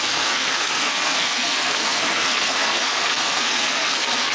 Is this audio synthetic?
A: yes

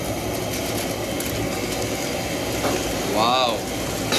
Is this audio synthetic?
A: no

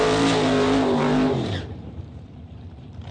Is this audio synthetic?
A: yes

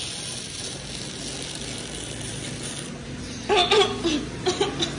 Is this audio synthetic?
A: no